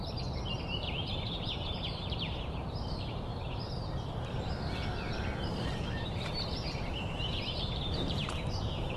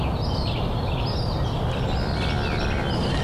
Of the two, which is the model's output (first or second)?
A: first